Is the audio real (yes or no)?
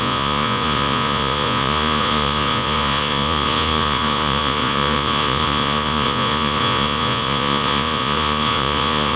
no